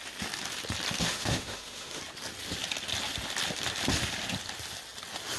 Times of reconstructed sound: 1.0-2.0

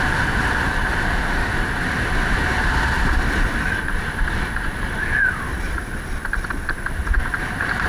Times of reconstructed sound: 1.0-1.5

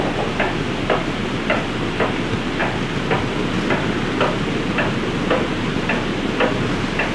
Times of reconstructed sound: none

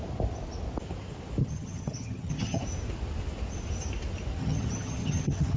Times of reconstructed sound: 1.4-2.6; 4.4-5.6

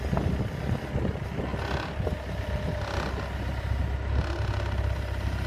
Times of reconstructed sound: none